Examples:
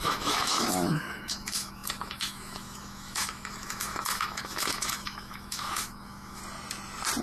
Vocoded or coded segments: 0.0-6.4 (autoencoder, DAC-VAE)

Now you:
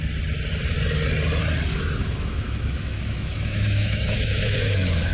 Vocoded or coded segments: 1.7-5.1 (autoencoder, DAC-VAE)

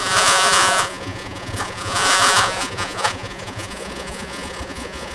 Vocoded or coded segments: 0.0-5.1 (vocoder, Vocos)

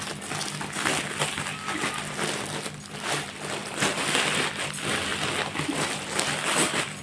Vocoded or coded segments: none

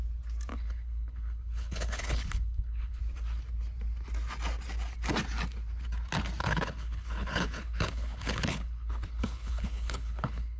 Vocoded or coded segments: 0.5-3.0 (codec, HILCodec); 6.4-10.6